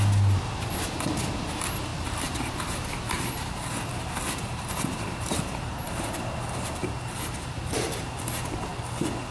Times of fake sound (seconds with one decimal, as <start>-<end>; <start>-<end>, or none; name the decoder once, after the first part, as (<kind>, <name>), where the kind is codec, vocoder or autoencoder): 1.9-6.2 (vocoder, BigVGAN v2); 6.8-8.1